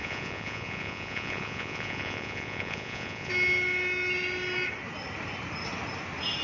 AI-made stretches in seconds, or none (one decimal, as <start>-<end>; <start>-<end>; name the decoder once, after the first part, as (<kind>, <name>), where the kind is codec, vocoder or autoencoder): 0.0-3.3 (vocoder, Vocos)